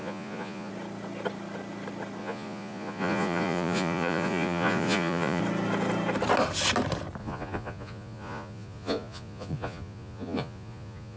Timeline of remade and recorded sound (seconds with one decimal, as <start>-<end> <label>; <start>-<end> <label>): 0.0-0.7 remade; 0.7-2.2 recorded; 2.2-5.4 remade; 5.4-7.2 recorded; 7.2-11.2 remade